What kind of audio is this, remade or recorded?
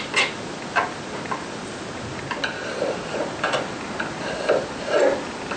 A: recorded